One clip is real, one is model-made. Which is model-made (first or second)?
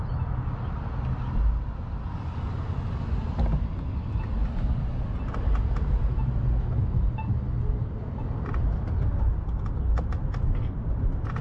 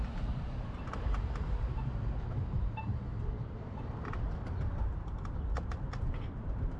second